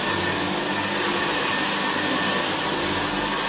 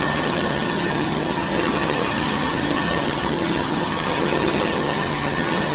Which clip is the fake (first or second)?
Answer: second